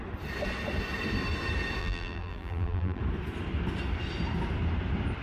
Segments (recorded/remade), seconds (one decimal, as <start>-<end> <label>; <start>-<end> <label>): 0.0-1.8 recorded; 1.8-3.0 remade; 3.0-5.2 recorded